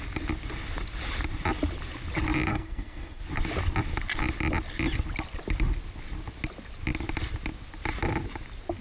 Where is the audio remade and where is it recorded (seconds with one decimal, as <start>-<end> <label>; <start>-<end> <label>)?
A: 0.0-2.5 recorded; 2.5-3.2 remade; 3.2-8.8 recorded